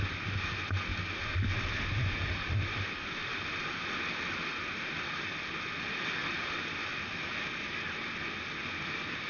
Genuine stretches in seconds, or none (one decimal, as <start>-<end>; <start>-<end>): 0.0-9.3